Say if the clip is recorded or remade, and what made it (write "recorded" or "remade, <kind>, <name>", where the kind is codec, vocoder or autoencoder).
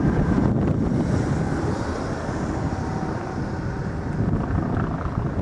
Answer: recorded